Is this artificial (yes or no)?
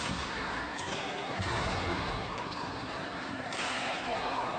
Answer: yes